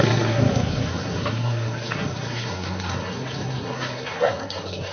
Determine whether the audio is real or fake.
fake